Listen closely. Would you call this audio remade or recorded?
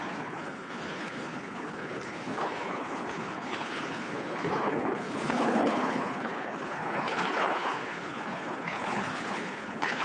remade